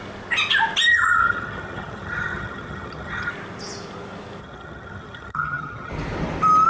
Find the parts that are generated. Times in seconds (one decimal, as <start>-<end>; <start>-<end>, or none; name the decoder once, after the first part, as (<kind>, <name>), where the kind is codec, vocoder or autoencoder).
0.9-3.3 (vocoder, HiFi-GAN); 4.4-5.9